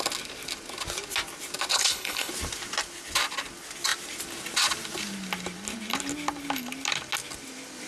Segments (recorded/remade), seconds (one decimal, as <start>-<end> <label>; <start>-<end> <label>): 0.0-1.7 recorded; 1.7-2.3 remade; 2.3-7.9 recorded